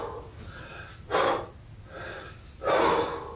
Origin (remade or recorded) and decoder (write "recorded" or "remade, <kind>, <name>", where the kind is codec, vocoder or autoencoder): recorded